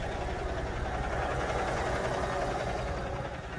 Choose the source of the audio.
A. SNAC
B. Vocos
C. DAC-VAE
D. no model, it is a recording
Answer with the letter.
B